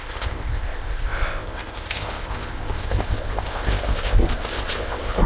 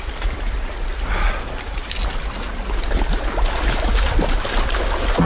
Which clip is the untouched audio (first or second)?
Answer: second